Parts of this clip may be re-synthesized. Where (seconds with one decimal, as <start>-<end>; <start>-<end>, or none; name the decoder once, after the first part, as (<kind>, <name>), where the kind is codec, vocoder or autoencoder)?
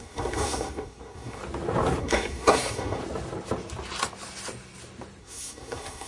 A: 0.0-1.4 (codec, SNAC); 2.0-3.0; 5.2-6.1